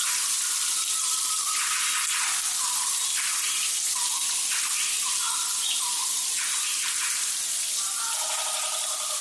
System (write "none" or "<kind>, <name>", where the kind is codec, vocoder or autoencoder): none